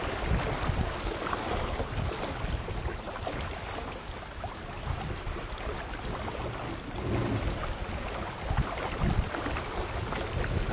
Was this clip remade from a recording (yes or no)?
no